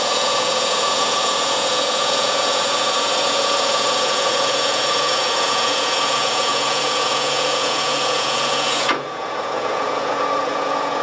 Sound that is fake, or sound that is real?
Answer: fake